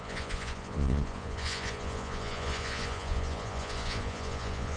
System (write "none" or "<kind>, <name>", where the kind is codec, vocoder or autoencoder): vocoder, Vocos